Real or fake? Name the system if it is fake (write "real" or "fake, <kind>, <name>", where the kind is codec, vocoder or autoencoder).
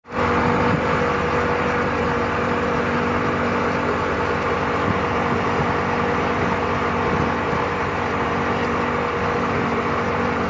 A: real